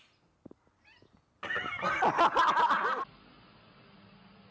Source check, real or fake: real